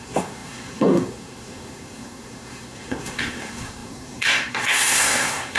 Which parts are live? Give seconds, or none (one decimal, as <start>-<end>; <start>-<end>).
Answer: none